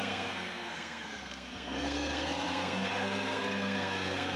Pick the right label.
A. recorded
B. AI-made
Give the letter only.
B